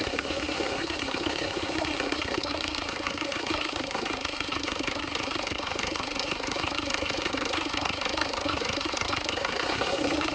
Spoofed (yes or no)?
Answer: yes